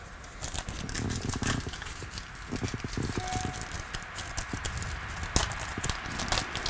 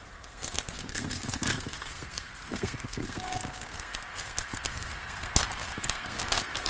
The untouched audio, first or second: first